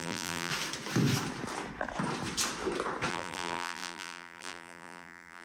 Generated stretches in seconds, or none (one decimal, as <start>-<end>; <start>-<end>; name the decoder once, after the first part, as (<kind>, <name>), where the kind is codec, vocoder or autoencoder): 0.0-0.5 (vocoder, BigVGAN v2); 3.1-5.4